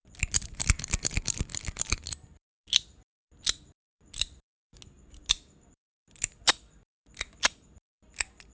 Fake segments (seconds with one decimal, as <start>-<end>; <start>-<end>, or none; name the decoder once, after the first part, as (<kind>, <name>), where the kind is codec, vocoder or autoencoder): none

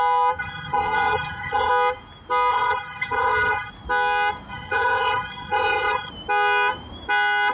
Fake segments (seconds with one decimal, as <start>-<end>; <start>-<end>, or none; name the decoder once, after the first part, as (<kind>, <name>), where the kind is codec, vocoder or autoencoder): 0.4-1.7 (vocoder, HiFi-GAN); 2.5-3.7; 4.5-6.1

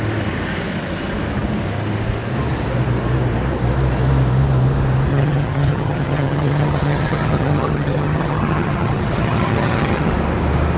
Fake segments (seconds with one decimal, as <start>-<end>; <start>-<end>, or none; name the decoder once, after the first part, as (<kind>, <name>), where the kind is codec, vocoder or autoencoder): 5.1-10.1 (vocoder, HiFi-GAN)

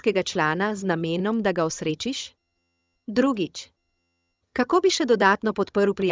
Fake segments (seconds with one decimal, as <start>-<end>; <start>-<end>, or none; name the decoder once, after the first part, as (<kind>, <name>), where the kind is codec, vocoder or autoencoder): 0.0-1.2 (vocoder, HiFi-GAN); 1.9-6.1

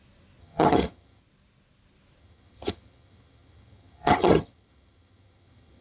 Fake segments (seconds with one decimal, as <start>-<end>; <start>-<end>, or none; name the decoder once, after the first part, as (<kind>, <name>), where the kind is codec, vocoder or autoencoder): 0.4-1.2 (vocoder, HiFi-GAN); 2.2-5.8